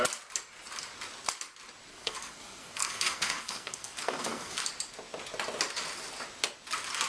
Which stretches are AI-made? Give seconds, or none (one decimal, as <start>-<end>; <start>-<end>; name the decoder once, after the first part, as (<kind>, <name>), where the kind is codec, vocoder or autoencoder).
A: 1.9-4.6 (codec, SNAC)